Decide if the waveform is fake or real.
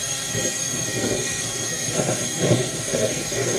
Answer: fake